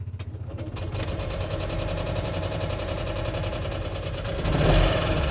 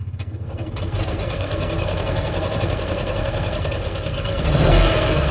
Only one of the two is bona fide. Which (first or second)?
first